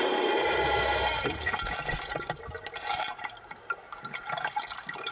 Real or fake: real